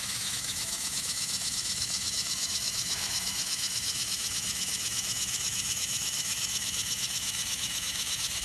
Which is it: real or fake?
fake